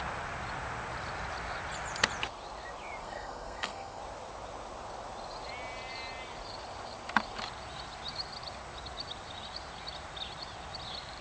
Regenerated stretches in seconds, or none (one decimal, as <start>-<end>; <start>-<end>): 3.0-4.0